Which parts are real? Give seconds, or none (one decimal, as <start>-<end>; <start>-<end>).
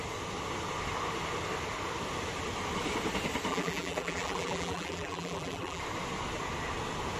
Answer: 0.0-3.5; 5.8-7.2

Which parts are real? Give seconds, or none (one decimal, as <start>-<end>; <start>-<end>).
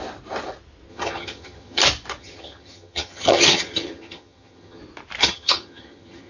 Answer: 0.0-0.9; 1.8-2.2; 4.8-5.2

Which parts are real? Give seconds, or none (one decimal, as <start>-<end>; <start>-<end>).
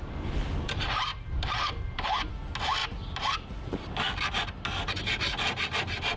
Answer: 0.0-6.2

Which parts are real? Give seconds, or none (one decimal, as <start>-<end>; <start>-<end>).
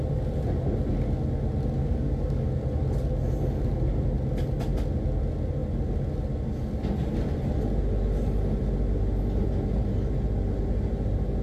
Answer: 0.0-1.8; 2.5-11.4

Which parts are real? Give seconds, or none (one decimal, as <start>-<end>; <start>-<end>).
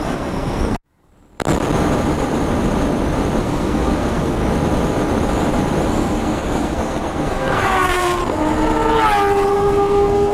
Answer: 1.1-3.4; 4.4-5.9; 8.2-9.5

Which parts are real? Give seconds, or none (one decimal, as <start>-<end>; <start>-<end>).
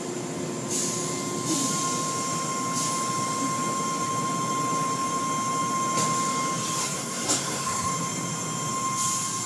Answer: 0.0-6.8; 7.9-9.5